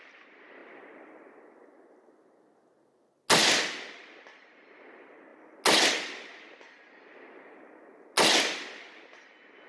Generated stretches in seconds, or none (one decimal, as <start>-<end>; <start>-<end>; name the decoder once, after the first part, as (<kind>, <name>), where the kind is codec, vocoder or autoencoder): none